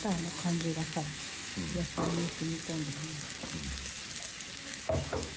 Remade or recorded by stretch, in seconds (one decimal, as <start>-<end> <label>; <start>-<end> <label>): 0.0-1.5 remade; 1.5-4.7 recorded; 4.7-5.4 remade